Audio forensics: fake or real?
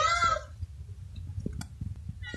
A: real